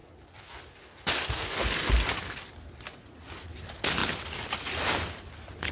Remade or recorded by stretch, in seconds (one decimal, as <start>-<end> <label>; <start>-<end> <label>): 0.0-5.7 recorded